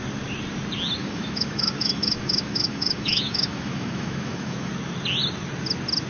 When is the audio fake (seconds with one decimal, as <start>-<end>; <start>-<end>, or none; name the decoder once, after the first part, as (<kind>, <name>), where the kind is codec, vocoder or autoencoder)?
1.0-4.7 (autoencoder, DAC-VAE)

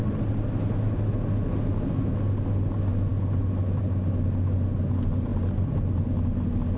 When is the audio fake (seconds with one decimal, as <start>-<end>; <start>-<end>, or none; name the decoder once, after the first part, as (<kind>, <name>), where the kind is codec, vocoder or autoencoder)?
none

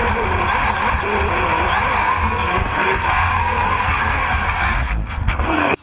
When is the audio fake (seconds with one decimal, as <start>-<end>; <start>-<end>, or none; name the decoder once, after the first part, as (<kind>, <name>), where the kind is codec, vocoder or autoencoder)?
2.0-5.8 (codec, SNAC)

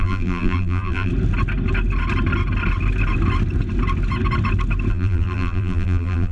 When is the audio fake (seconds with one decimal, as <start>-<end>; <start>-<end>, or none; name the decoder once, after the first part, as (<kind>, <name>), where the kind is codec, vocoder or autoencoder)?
0.0-1.1 (vocoder, BigVGAN v2); 4.9-6.3

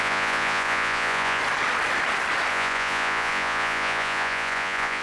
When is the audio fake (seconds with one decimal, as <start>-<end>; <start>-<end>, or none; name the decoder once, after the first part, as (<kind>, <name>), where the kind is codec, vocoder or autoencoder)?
0.0-1.4 (vocoder, Vocos); 2.5-5.0